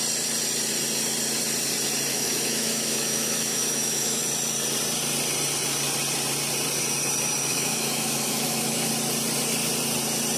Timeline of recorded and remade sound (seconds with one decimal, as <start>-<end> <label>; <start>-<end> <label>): 0.0-2.1 recorded; 2.1-4.2 remade; 4.2-7.5 recorded; 7.5-8.9 remade; 8.9-10.4 recorded